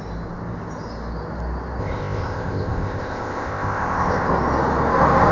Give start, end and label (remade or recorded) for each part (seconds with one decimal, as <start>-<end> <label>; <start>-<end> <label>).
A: 0.0-1.8 recorded; 1.8-4.3 remade; 4.3-5.3 recorded